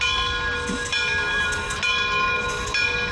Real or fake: real